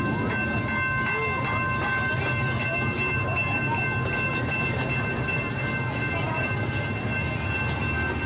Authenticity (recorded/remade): recorded